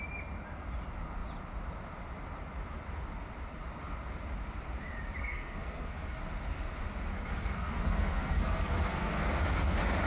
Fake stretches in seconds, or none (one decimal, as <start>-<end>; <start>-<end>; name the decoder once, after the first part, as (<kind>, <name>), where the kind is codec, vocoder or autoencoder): 5.2-6.2 (codec, SNAC); 7.1-9.4